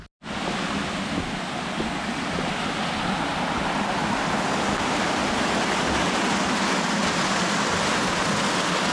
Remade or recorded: recorded